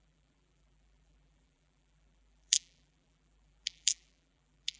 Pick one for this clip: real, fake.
fake